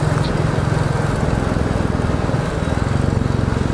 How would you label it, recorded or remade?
recorded